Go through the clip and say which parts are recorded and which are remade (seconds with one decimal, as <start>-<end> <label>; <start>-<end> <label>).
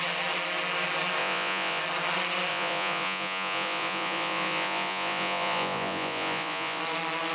0.0-1.2 recorded; 1.2-1.8 remade; 1.8-2.5 recorded; 2.5-6.8 remade; 6.8-7.3 recorded